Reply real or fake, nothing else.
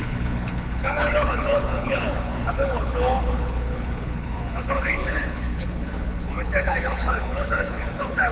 fake